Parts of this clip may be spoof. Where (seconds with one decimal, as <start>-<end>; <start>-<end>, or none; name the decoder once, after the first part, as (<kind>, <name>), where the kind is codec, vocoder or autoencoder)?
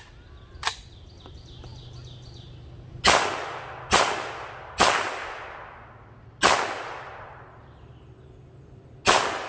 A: none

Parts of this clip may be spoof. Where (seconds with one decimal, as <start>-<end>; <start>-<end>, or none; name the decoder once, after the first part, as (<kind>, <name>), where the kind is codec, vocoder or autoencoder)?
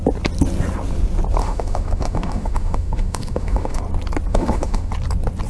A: 1.4-3.8 (autoencoder, DAC-VAE); 4.3-4.9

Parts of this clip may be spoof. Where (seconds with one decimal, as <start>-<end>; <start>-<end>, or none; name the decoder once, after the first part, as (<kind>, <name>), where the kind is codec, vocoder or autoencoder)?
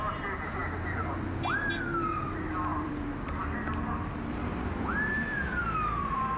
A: 2.7-6.4 (vocoder, BigVGAN v2)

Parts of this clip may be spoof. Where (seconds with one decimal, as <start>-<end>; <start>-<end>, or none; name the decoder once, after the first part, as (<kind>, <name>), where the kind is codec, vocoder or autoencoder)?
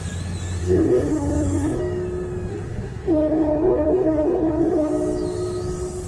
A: 0.6-1.8 (codec, SNAC); 2.5-4.9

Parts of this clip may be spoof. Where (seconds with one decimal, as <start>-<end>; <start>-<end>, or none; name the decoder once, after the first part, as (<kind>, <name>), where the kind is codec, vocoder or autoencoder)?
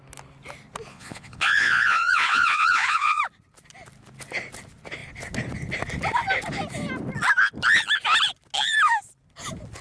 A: 0.9-3.2 (vocoder, Vocos)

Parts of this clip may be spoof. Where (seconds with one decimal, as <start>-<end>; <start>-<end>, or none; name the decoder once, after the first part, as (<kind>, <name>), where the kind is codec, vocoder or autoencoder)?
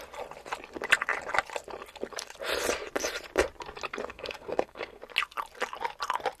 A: 4.1-5.0 (codec, SNAC)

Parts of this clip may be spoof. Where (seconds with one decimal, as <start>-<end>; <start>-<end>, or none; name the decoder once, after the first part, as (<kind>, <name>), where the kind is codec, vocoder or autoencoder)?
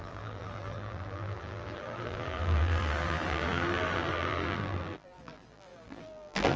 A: 0.0-6.6 (vocoder, BigVGAN v2)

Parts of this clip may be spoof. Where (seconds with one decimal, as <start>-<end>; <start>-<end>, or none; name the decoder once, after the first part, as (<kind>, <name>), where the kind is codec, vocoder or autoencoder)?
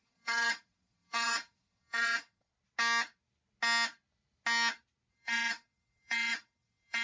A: 0.0-2.5 (vocoder, WaveNeXt); 5.1-7.0